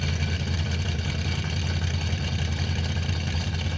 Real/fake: real